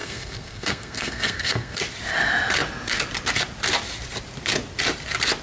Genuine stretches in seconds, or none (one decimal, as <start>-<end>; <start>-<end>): 1.8-5.4